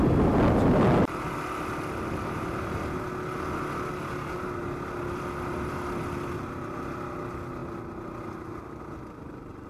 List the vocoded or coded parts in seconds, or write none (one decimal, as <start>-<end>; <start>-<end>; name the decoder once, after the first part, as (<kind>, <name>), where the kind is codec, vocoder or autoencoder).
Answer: none